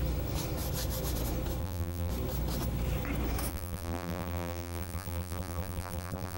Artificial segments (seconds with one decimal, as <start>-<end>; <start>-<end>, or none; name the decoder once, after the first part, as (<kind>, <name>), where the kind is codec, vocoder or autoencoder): 1.6-2.1 (vocoder, BigVGAN v2); 3.5-6.4